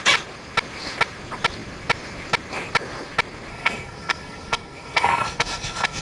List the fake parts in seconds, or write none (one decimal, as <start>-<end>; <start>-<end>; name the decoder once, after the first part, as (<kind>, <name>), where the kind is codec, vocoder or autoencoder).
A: 3.5-6.0 (codec, SNAC)